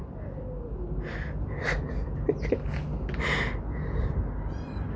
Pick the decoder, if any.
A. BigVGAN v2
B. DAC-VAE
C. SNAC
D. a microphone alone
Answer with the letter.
D